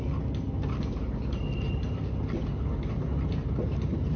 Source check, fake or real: real